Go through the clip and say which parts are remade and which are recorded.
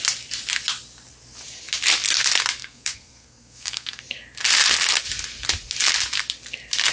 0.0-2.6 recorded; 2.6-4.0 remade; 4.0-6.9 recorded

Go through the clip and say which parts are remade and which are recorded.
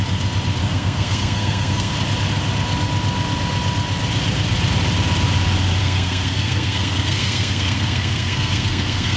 0.0-0.6 recorded; 0.6-1.9 remade; 1.9-5.8 recorded; 5.8-9.2 remade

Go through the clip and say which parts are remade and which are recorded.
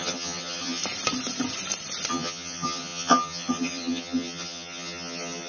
0.0-0.8 remade; 0.8-2.1 recorded; 2.1-5.5 remade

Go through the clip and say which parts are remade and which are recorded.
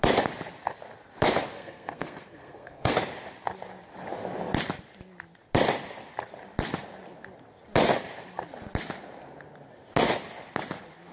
0.0-1.5 recorded; 1.5-2.9 remade; 2.9-11.1 recorded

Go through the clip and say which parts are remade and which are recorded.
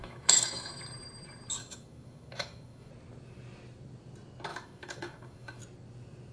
0.0-0.8 remade; 0.8-1.6 recorded; 1.6-2.9 remade; 2.9-4.5 recorded; 4.5-5.6 remade; 5.6-6.3 recorded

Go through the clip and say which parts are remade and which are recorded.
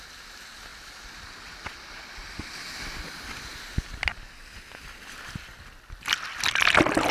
0.0-7.1 recorded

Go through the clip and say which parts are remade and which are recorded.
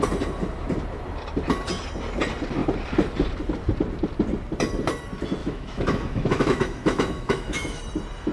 0.0-5.4 recorded; 5.4-7.8 remade; 7.8-8.3 recorded